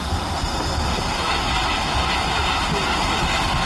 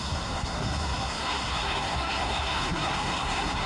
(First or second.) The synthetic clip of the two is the second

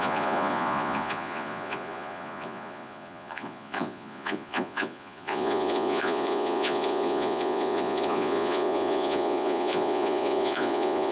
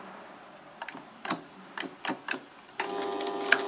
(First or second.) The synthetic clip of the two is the first